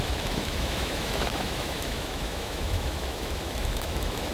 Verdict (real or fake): fake